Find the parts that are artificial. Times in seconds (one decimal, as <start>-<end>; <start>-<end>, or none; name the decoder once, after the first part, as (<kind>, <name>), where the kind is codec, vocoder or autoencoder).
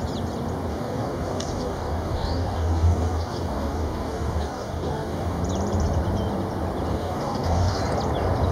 0.7-5.4 (codec, DAC); 6.9-7.8